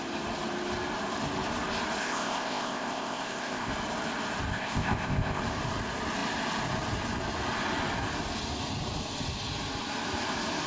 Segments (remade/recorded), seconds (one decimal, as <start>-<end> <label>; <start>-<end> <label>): 0.0-2.0 recorded; 2.0-3.7 remade; 3.7-4.5 recorded; 4.5-5.4 remade; 5.4-10.7 recorded